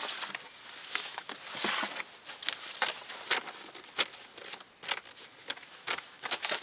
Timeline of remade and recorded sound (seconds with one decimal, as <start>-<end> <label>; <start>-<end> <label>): 0.0-0.8 recorded; 0.8-1.3 remade; 1.3-5.4 recorded; 5.4-6.6 remade